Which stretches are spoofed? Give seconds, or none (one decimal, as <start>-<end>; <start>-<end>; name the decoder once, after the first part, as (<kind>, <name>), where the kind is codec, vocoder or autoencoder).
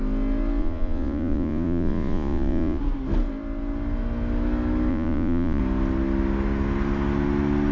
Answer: 0.6-2.8 (vocoder, Vocos); 4.9-5.6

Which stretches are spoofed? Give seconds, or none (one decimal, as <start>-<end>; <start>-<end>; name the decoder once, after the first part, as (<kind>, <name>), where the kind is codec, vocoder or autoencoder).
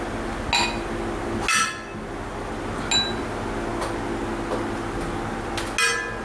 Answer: none